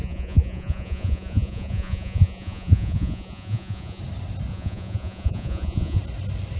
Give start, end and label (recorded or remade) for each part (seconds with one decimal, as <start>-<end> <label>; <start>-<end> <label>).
0.0-4.0 remade; 4.0-4.5 recorded; 4.5-6.0 remade; 6.0-6.6 recorded